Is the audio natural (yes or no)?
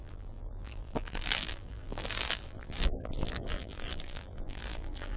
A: no